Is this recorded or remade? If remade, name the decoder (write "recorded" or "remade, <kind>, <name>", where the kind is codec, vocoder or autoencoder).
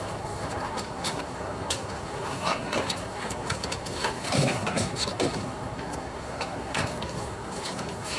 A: remade, codec, SNAC